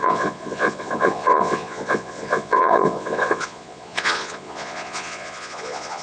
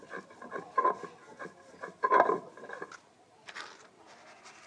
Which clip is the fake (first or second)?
first